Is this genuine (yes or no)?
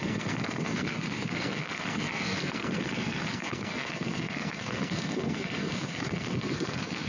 no